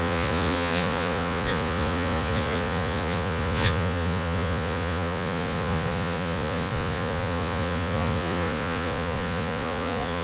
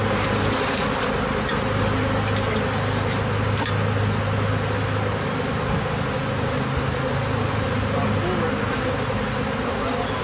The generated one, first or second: first